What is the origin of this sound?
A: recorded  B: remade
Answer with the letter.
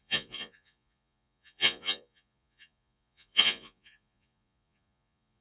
B